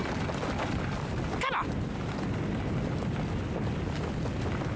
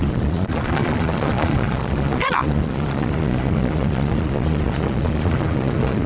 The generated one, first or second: second